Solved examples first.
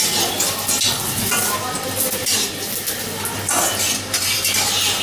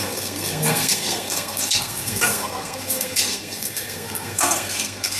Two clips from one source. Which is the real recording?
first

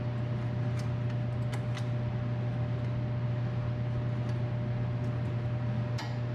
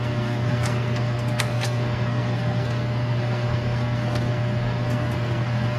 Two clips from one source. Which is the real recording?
first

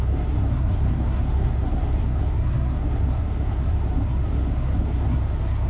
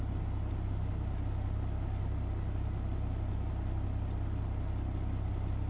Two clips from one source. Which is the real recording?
second